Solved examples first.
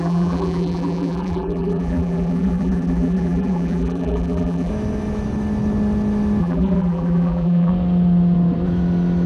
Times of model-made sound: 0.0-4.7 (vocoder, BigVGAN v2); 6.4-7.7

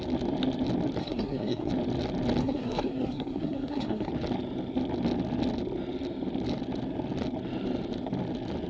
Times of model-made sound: 1.0-1.7 (codec, SNAC); 2.4-4.1